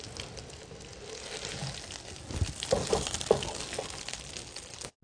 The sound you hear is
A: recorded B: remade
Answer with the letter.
A